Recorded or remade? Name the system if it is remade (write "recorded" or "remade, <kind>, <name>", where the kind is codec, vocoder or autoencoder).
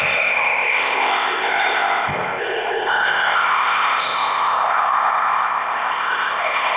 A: remade, codec, ZipCodec